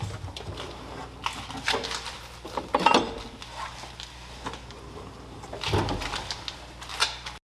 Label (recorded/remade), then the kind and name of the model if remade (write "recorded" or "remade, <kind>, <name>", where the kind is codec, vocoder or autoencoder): recorded